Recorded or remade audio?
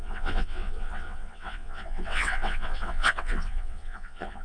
remade